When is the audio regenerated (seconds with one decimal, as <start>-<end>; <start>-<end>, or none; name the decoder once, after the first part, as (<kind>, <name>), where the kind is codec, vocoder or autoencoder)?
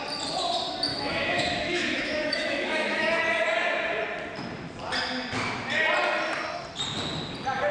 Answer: 0.9-3.2 (autoencoder, DAC-VAE)